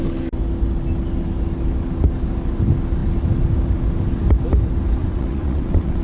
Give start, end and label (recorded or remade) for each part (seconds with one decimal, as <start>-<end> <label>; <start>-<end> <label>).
0.0-5.0 recorded; 5.0-6.0 remade